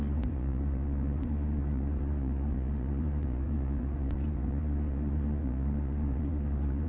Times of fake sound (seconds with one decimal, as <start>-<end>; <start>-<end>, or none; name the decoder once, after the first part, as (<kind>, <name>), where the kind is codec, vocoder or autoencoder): 0.0-6.9 (vocoder, Vocos)